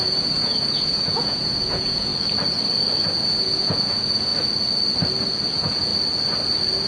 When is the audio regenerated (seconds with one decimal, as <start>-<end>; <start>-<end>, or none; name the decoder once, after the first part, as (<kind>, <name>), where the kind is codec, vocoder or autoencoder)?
0.0-2.1 (vocoder, Vocos); 3.3-4.3; 5.5-5.9

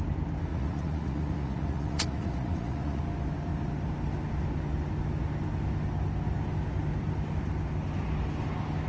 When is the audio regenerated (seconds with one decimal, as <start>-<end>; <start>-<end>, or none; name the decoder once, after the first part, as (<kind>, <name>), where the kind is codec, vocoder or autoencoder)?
0.5-3.0 (vocoder, Vocos)

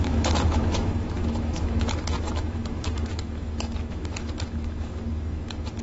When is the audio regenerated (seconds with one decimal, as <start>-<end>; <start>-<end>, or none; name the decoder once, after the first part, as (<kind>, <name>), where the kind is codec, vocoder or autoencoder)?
0.0-5.8 (autoencoder, DAC-VAE)

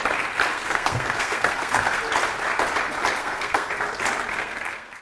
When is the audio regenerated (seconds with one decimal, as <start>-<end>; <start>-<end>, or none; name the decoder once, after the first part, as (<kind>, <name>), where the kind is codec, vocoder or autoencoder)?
0.5-2.0 (codec, SNAC); 3.2-3.7; 4.3-5.0

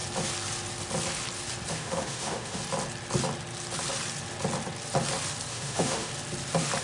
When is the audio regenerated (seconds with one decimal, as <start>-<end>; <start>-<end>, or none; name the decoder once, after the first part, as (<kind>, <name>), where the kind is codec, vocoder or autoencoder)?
1.7-2.6 (autoencoder, DAC-VAE); 5.5-6.1

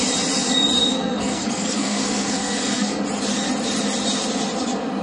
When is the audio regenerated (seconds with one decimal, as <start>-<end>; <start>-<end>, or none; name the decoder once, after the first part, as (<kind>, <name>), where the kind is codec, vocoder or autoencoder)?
0.9-3.0 (codec, SNAC)

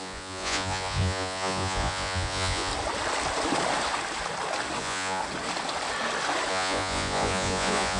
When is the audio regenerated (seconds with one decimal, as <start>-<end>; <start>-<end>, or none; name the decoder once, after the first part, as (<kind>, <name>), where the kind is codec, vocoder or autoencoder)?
0.0-2.7 (vocoder, Vocos); 4.8-5.2; 6.5-8.0

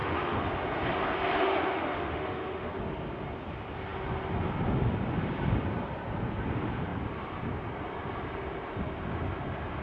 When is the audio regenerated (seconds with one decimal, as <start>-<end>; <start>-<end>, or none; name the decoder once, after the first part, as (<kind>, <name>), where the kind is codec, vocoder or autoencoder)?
0.0-0.5 (autoencoder, DAC-VAE); 1.4-2.8